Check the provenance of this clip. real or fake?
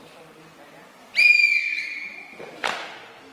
real